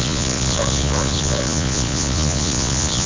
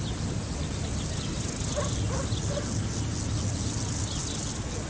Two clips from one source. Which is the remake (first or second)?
first